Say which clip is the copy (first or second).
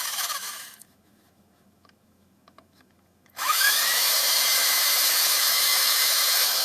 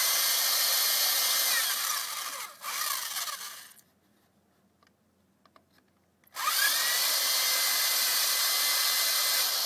first